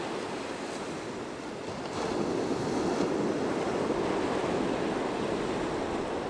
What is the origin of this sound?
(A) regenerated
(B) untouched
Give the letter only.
B